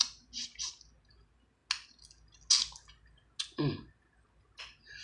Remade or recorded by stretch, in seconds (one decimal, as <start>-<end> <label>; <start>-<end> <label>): 0.0-5.0 recorded

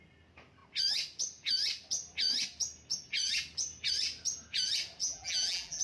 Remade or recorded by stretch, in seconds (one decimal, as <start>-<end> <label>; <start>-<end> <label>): 0.0-5.0 recorded; 5.0-5.8 remade

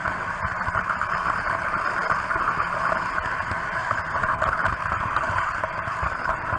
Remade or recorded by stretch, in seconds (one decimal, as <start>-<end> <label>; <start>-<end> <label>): 0.0-3.8 recorded; 3.8-6.6 remade

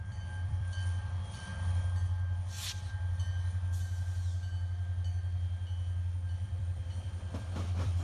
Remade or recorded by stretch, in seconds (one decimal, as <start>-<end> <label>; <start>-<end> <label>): 0.0-1.5 remade; 1.5-6.3 recorded; 6.3-8.0 remade

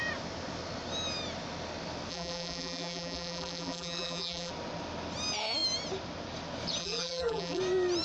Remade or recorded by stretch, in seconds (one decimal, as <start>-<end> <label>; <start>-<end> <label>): 0.0-2.1 recorded; 2.1-4.5 remade; 4.5-6.8 recorded; 6.8-7.6 remade; 7.6-8.0 recorded

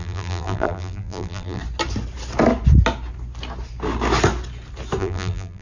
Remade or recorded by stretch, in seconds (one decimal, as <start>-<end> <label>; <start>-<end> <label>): 0.0-1.6 remade; 1.6-5.0 recorded; 5.0-5.6 remade

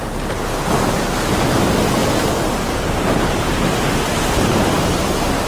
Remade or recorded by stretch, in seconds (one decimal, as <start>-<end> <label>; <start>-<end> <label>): 0.0-5.5 recorded

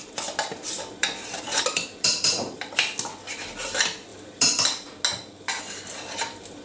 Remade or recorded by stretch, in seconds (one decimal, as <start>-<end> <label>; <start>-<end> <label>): 0.0-1.0 recorded; 1.0-2.7 remade; 2.7-4.1 recorded; 4.1-4.6 remade; 4.6-6.6 recorded